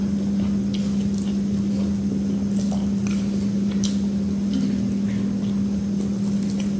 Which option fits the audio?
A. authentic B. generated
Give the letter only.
A